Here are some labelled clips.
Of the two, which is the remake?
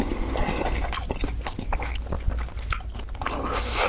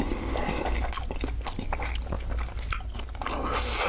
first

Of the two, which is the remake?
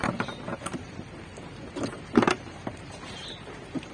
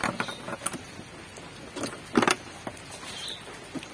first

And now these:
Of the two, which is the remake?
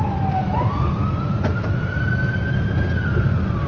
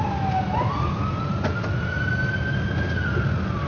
first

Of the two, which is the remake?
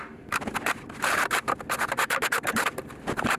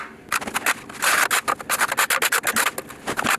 first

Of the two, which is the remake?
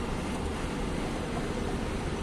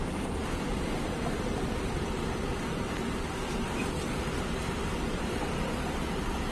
second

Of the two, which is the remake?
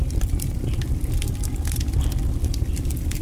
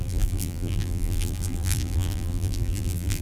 second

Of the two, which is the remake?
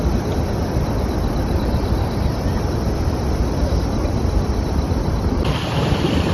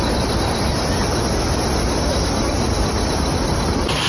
first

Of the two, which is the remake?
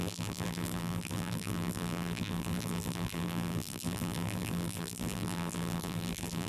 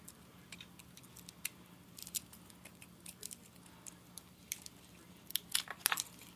first